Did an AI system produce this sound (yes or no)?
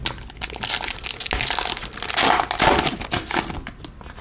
no